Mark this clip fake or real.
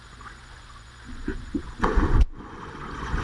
fake